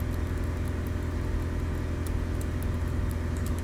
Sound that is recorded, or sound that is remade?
recorded